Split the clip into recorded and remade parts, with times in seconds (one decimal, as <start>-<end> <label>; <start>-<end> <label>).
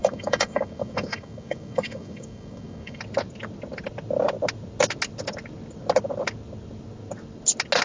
0.0-3.0 remade; 3.0-7.8 recorded